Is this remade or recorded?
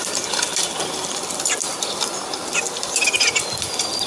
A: recorded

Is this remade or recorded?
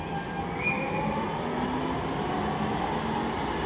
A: recorded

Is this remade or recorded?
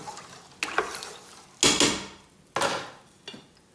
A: recorded